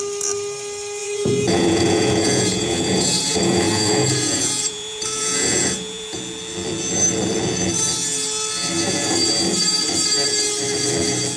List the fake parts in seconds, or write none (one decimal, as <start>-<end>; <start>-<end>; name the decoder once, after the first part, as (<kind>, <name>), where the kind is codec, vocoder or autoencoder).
1.0-6.2 (vocoder, Vocos)